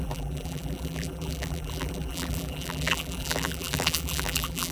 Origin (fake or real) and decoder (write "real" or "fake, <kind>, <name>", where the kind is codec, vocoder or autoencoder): fake, vocoder, BigVGAN v2